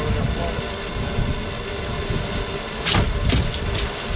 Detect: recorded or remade recorded